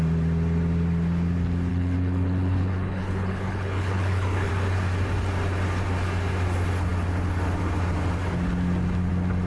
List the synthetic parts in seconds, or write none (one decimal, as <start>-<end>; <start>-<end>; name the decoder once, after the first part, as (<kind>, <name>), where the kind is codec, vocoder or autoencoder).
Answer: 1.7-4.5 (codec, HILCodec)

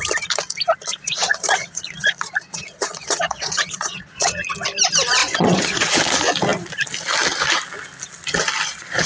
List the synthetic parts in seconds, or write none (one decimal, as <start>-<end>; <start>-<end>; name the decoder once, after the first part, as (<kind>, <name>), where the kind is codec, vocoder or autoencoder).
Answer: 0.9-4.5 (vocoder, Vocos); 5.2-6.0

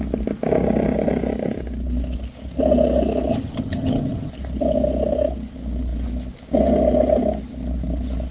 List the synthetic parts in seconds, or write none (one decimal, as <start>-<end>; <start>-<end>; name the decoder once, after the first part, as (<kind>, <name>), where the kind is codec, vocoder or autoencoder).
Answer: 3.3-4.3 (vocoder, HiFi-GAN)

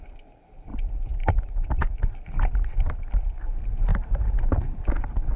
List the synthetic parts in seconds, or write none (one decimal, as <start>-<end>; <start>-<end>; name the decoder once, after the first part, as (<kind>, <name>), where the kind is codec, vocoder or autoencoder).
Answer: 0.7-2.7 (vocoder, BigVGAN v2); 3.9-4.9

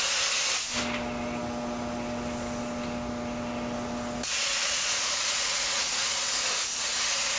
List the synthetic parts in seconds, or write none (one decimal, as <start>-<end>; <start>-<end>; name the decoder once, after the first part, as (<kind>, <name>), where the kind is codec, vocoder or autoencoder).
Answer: 4.5-6.1 (vocoder, Vocos)